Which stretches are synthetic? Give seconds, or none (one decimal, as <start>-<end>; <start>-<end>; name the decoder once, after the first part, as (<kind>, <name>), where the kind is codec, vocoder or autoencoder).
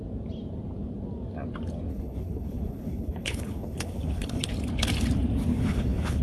1.9-4.5 (codec, HILCodec); 5.5-6.2